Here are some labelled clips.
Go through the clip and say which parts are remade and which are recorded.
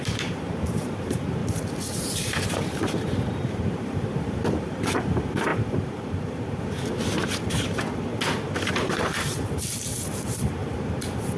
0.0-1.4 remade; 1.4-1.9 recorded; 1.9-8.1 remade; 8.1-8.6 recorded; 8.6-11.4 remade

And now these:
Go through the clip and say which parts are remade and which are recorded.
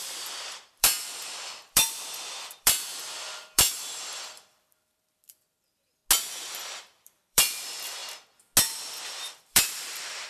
0.0-6.0 remade; 6.0-6.8 recorded; 6.8-8.0 remade; 8.0-9.1 recorded; 9.1-10.3 remade